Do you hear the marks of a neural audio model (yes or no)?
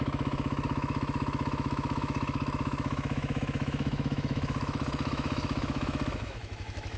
yes